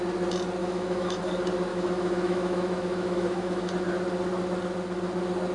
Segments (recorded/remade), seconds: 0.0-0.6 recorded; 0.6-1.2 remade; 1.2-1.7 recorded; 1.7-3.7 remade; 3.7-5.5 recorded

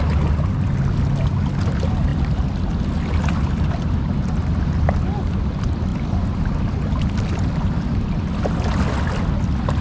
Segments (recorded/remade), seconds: 0.0-9.8 recorded

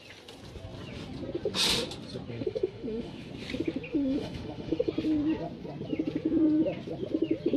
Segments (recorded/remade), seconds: 0.0-2.3 recorded; 2.3-3.3 remade; 3.3-3.9 recorded; 3.9-4.9 remade; 4.9-7.6 recorded

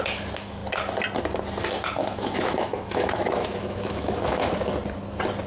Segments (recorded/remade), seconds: 0.0-2.0 recorded; 2.0-4.5 remade; 4.5-5.5 recorded

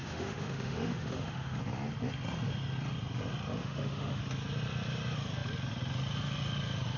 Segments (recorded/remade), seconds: 0.0-1.6 remade; 1.6-3.6 recorded; 3.6-4.2 remade; 4.2-7.0 recorded

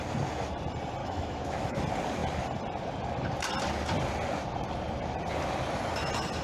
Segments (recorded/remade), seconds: 0.0-1.0 recorded; 1.0-1.8 remade; 1.8-6.4 recorded

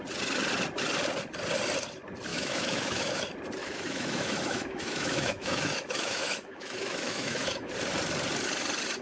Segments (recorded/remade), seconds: 0.0-2.3 recorded; 2.3-3.2 remade; 3.2-3.6 recorded; 3.6-7.7 remade; 7.7-9.0 recorded